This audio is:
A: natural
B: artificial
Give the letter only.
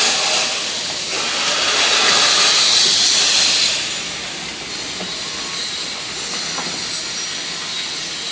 A